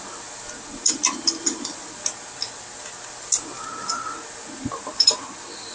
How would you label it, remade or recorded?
recorded